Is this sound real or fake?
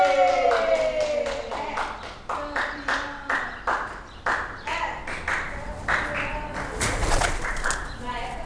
real